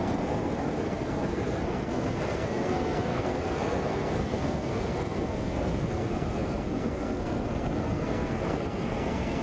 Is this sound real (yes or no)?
no